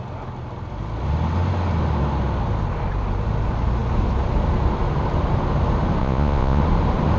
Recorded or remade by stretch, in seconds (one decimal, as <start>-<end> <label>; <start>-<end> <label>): 0.0-6.0 recorded; 6.0-6.6 remade; 6.6-7.2 recorded

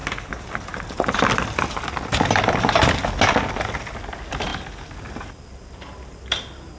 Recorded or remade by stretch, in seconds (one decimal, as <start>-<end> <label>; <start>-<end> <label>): 0.0-6.8 recorded

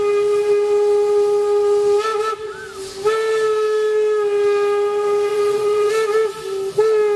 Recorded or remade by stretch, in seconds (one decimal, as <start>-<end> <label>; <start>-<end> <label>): 0.0-5.3 recorded; 5.3-5.9 remade; 5.9-7.2 recorded

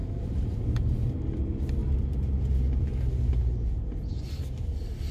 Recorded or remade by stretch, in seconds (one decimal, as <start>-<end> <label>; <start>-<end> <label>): 0.0-1.4 remade; 1.4-5.1 recorded

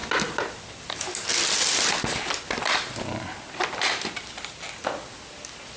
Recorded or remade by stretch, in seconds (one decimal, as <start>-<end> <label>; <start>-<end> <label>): 0.0-5.8 recorded